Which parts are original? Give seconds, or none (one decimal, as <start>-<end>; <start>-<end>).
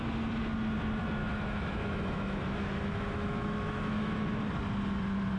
0.0-1.2; 4.4-5.4